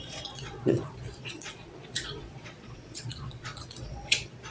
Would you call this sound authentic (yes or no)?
no